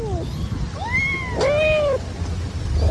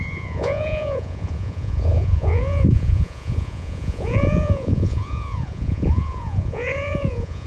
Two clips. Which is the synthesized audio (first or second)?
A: second